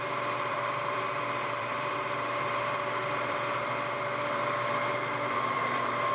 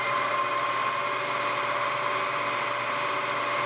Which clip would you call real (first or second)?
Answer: second